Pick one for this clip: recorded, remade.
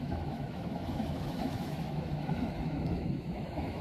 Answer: remade